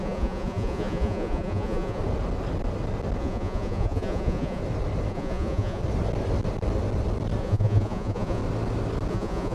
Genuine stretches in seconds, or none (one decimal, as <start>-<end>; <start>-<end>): 2.0-3.2; 4.6-5.1; 5.8-7.4; 8.4-9.1